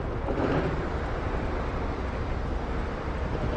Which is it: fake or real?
fake